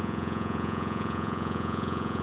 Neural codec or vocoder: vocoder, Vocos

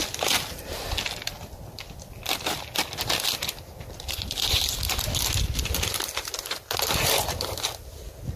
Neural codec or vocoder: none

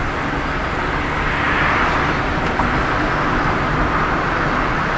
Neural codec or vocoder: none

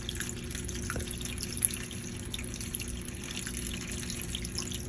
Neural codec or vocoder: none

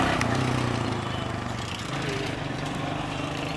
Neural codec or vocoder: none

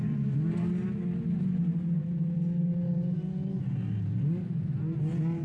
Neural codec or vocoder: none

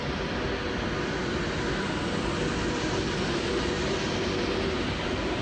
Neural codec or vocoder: none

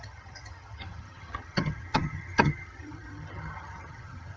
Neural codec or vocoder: vocoder, HiFi-GAN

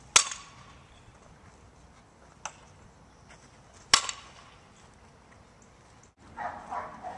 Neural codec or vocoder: none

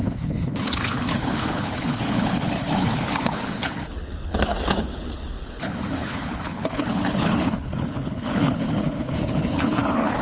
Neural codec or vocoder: codec, HILCodec